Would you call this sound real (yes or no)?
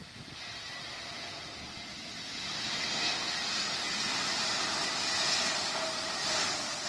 yes